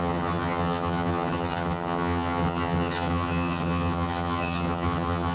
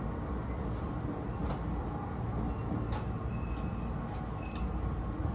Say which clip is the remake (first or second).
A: first